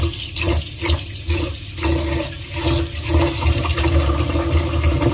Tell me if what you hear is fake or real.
real